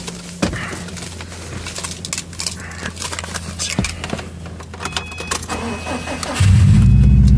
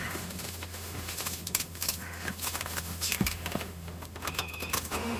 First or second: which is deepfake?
second